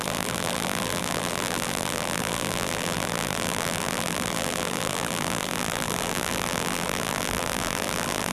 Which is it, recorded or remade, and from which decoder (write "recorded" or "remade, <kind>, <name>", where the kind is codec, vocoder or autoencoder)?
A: remade, vocoder, BigVGAN v2